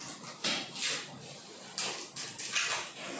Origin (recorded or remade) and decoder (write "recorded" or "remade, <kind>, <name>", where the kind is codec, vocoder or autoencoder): recorded